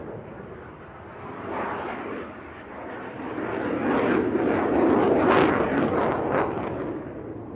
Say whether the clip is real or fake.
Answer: fake